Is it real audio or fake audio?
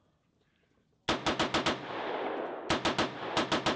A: real